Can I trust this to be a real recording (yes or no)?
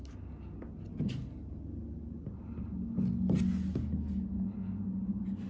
yes